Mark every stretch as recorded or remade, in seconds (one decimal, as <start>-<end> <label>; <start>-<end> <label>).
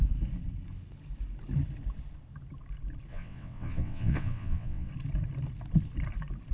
0.0-3.1 recorded; 3.1-4.9 remade; 4.9-6.5 recorded